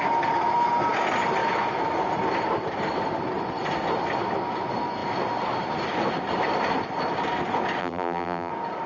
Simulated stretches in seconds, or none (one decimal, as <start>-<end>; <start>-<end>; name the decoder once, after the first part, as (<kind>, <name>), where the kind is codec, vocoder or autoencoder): 7.8-8.5 (vocoder, BigVGAN v2)